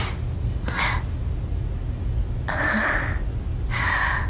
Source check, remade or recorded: recorded